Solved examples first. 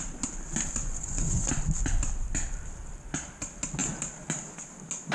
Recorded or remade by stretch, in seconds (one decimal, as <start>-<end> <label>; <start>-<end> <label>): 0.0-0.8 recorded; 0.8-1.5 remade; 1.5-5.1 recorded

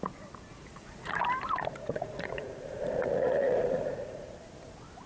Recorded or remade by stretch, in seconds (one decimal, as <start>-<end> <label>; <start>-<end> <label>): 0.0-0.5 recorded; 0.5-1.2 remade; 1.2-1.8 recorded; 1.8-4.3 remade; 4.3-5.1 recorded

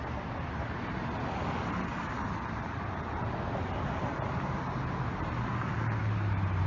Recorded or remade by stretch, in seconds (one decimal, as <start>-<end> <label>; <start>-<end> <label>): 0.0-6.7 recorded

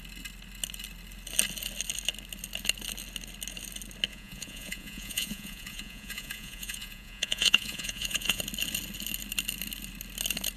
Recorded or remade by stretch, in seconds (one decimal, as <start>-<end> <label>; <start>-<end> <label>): 0.0-4.1 recorded; 4.1-8.4 remade; 8.4-10.6 recorded